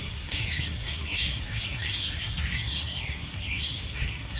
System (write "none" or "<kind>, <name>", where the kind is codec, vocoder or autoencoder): codec, SNAC